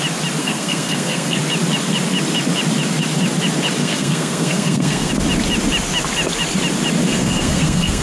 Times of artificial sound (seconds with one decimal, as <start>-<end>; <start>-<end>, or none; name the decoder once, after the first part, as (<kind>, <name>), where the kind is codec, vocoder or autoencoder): 0.4-1.4 (codec, SNAC); 3.8-5.1; 7.1-8.0